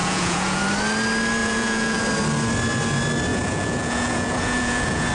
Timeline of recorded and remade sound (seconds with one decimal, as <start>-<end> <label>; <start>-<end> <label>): 0.0-0.6 remade; 0.6-1.4 recorded; 1.4-2.0 remade; 2.0-3.3 recorded; 3.3-5.1 remade